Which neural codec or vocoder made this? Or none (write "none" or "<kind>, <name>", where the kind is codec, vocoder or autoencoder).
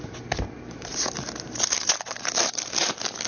vocoder, BigVGAN v2